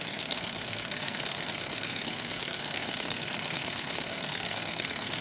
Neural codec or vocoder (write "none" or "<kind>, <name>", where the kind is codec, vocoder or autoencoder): codec, SNAC